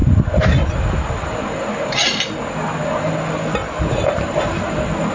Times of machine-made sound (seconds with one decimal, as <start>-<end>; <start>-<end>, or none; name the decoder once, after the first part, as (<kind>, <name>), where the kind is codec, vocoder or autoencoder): 3.6-4.6 (vocoder, BigVGAN v2)